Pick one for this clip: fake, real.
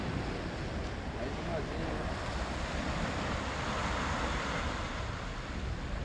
real